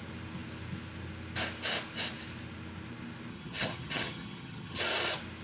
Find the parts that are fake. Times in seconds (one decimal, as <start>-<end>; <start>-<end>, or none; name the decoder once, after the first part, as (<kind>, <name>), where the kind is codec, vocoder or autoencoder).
3.3-4.8 (vocoder, HiFi-GAN)